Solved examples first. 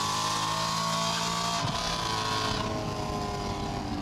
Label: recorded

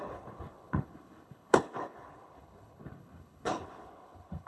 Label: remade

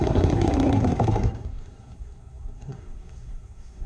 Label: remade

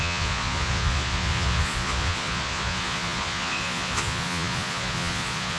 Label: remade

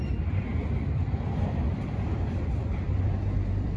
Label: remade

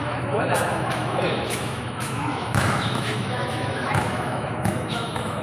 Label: remade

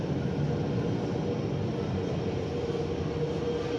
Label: recorded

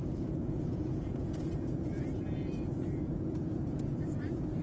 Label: remade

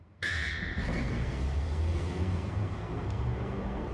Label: remade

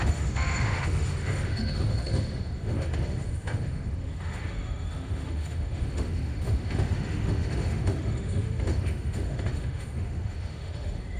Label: remade